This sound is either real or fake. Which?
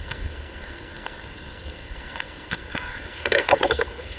fake